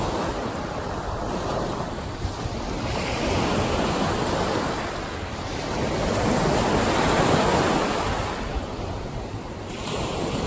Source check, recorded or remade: recorded